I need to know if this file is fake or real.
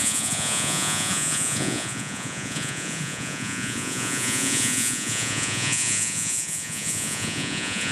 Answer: fake